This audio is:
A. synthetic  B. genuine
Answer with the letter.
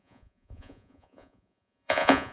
A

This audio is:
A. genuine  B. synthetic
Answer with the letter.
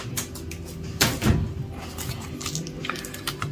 A